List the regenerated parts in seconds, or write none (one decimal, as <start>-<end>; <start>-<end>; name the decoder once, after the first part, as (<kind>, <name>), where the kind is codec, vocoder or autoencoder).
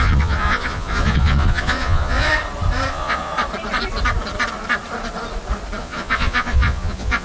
0.0-2.3 (vocoder, Vocos); 2.9-3.3; 5.8-7.2